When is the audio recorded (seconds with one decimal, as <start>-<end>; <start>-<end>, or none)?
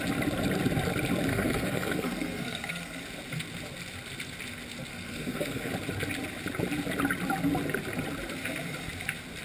0.0-1.3; 3.0-4.9; 5.7-9.4